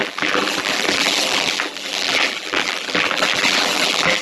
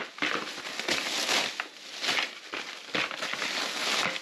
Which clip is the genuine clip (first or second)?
second